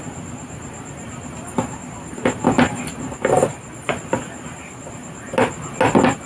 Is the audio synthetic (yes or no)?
no